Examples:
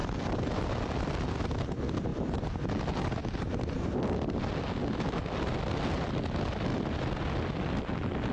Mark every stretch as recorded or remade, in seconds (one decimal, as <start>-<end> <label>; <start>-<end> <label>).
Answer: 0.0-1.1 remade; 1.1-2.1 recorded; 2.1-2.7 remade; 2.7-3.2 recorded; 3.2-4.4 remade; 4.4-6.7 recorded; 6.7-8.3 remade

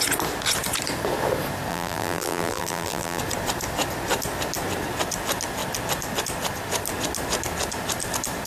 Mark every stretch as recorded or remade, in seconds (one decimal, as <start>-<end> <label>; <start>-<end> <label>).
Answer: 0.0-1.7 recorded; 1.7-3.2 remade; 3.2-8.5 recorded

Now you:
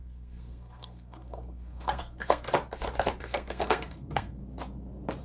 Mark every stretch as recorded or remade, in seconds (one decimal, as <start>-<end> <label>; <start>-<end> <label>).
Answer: 0.0-2.5 remade; 2.5-3.2 recorded; 3.2-4.4 remade; 4.4-5.2 recorded